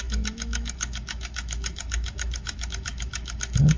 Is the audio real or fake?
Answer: fake